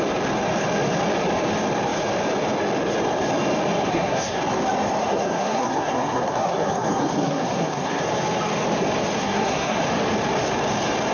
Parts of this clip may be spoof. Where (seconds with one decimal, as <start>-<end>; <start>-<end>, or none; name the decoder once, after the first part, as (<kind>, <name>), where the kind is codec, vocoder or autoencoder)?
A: 3.9-4.4 (codec, SNAC); 5.0-8.0; 9.2-9.8